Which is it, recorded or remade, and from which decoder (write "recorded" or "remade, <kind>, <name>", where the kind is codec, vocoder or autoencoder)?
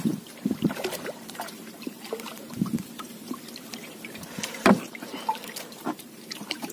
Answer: remade, vocoder, BigVGAN v2